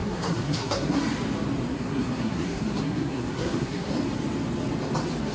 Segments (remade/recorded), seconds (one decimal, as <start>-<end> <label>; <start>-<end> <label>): 0.0-1.0 remade; 1.0-1.7 recorded; 1.7-3.9 remade; 3.9-5.3 recorded